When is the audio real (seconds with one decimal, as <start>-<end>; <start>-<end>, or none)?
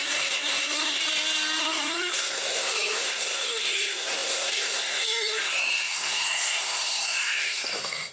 1.0-1.6